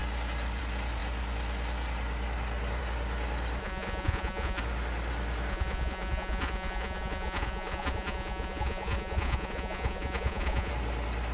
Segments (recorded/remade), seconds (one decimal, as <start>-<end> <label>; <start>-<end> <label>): 0.0-3.6 recorded; 3.6-4.6 remade; 4.6-5.5 recorded; 5.5-10.7 remade; 10.7-11.3 recorded